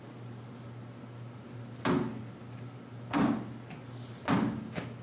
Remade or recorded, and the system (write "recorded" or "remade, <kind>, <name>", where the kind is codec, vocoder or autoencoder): recorded